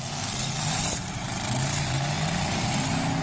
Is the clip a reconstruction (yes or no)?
no